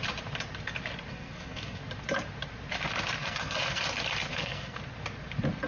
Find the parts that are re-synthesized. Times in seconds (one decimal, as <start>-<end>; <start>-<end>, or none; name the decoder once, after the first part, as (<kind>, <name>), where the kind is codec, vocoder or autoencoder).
1.1-1.8 (codec, SNAC); 3.2-3.8; 4.3-4.8